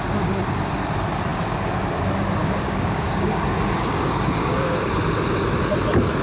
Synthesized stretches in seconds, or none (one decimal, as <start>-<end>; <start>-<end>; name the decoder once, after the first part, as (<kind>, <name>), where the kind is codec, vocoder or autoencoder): 2.4-5.0 (codec, DAC)